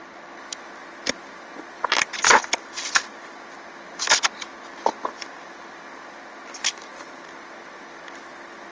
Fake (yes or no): no